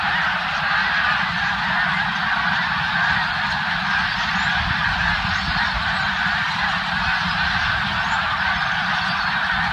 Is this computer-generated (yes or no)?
no